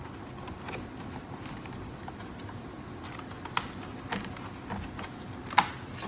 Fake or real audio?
real